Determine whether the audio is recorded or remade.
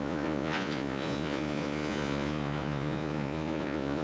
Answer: remade